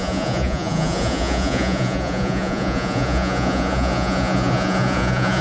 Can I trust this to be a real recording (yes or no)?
no